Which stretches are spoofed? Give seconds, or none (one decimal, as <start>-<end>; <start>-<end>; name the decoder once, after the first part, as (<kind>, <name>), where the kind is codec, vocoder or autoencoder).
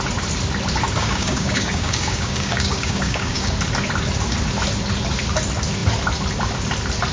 1.0-3.5 (codec, DAC)